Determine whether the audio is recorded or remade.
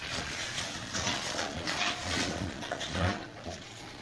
remade